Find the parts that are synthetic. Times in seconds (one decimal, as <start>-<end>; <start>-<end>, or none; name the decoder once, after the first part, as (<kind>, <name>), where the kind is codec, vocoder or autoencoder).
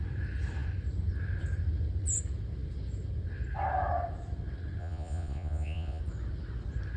4.8-6.0 (vocoder, Vocos)